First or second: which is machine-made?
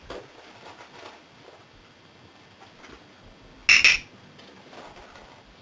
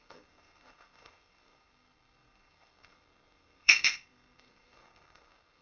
second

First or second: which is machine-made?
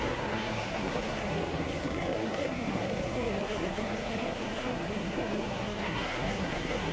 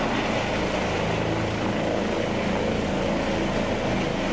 first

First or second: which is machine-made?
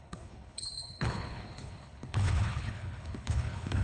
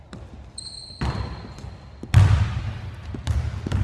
first